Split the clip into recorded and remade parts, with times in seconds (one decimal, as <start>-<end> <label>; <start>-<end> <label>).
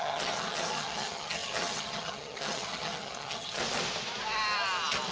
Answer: 0.0-3.6 remade; 3.6-5.1 recorded